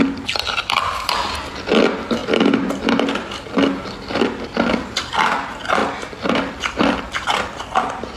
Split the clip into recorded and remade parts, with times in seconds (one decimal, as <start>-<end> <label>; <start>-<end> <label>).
0.0-5.8 recorded; 5.8-7.7 remade; 7.7-8.2 recorded